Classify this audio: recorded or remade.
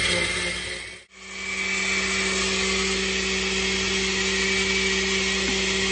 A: recorded